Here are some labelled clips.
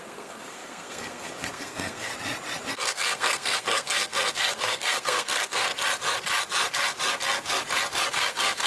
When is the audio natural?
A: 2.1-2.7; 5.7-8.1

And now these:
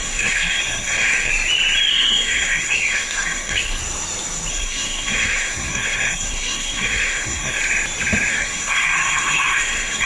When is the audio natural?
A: 1.3-1.9; 3.8-4.5; 7.6-8.3

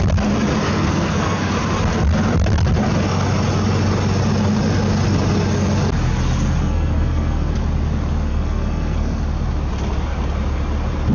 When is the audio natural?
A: 0.0-0.6; 1.5-6.6; 7.5-8.3; 9.2-11.1

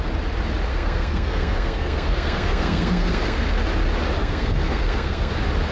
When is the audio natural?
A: 0.0-0.7; 3.5-4.2; 5.3-5.7